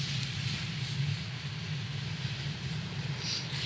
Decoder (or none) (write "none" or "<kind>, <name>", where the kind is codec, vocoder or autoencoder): none